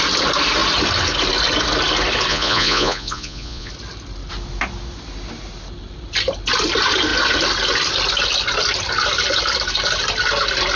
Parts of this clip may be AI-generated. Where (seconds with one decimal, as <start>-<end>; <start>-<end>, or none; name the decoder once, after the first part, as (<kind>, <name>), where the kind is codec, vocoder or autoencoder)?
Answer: 2.3-3.7 (vocoder, Vocos)